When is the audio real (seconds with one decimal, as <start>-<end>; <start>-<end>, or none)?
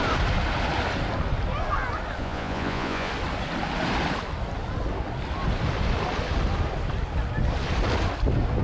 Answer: 0.0-2.2; 3.1-8.6